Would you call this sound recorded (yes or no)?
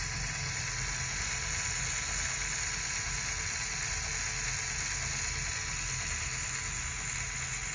yes